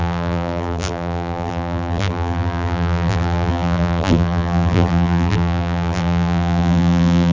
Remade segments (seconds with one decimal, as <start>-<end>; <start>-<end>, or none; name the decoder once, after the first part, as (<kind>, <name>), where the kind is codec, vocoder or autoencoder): 0.0-7.3 (vocoder, BigVGAN v2)